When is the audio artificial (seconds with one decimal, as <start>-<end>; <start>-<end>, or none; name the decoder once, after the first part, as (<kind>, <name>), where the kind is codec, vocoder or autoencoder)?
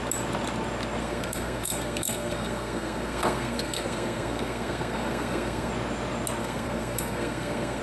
1.0-5.7 (codec, SNAC); 6.4-7.8